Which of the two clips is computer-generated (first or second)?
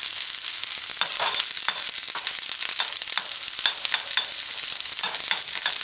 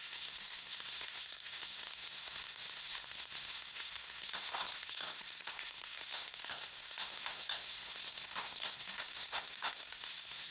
second